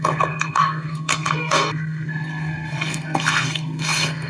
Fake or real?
fake